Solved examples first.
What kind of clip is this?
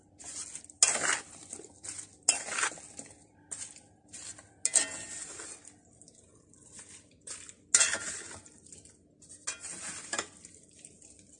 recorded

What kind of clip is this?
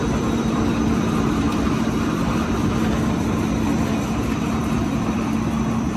remade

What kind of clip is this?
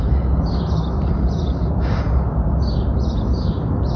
recorded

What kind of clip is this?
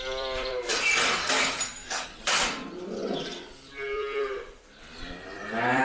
remade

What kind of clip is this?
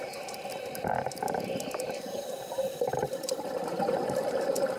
remade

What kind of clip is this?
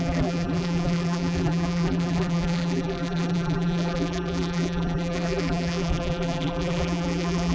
remade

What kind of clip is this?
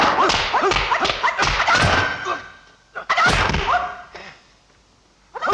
recorded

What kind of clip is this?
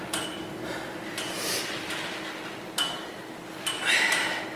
recorded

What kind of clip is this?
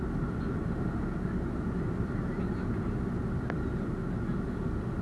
recorded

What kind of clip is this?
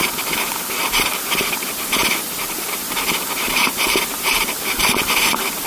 remade